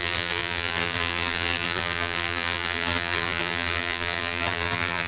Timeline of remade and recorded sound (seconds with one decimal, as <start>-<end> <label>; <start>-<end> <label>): 0.0-5.1 remade